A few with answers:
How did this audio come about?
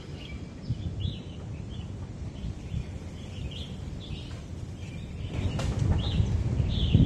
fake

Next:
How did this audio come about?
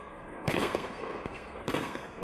fake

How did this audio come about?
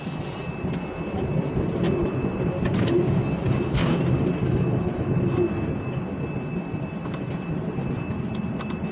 real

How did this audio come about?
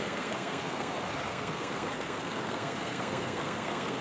fake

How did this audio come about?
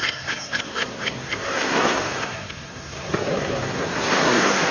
fake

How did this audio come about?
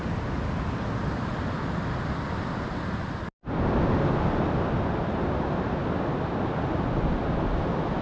real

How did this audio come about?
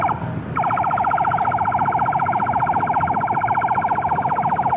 fake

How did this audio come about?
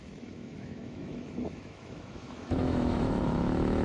fake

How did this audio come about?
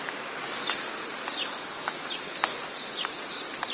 real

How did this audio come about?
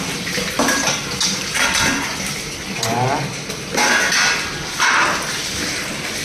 real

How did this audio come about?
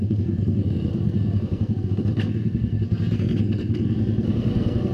fake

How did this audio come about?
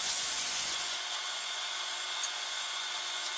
fake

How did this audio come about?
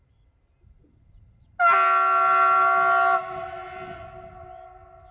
real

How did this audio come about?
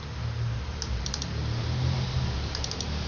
real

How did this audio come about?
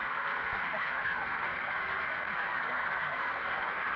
fake